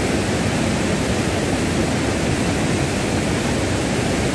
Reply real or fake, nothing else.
real